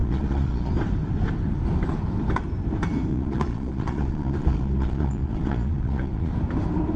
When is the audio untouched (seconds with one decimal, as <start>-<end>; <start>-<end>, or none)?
0.7-3.1; 6.3-7.0